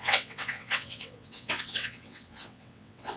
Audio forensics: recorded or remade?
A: remade